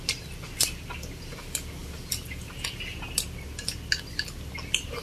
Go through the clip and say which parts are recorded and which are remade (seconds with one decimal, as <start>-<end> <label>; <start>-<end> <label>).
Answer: 0.0-5.0 recorded